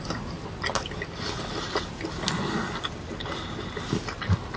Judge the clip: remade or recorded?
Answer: recorded